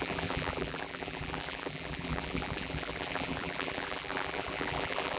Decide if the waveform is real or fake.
fake